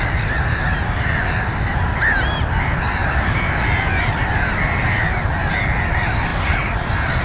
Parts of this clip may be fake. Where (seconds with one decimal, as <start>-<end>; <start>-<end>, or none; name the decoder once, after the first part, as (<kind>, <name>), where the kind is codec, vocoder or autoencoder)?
3.0-5.4 (vocoder, BigVGAN v2)

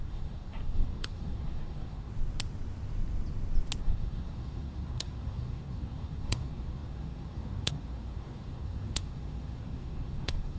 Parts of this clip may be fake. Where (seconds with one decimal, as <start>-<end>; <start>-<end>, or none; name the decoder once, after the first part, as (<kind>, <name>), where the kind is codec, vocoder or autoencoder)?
0.0-2.1 (codec, SNAC); 3.8-10.6